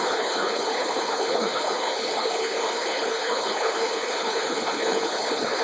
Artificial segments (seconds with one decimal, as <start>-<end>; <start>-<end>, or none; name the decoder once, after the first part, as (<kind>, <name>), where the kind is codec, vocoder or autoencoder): 0.0-5.6 (codec, HILCodec)